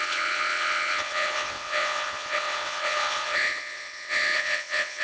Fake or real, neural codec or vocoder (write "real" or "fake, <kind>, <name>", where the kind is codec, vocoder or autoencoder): fake, vocoder, WaveNeXt